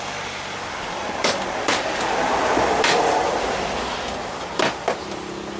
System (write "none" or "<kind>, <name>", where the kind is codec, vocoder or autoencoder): vocoder, BigVGAN v2